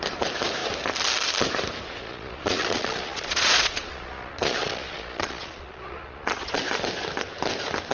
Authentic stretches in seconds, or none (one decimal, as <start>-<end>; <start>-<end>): 0.0-2.0; 6.6-7.9